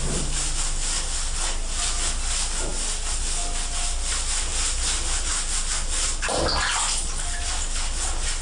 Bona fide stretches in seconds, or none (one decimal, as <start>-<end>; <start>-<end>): 0.0-8.4